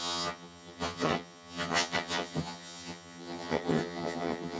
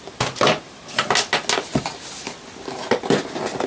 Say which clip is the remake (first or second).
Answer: first